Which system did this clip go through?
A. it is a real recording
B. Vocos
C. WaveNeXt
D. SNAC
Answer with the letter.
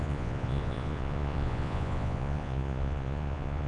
B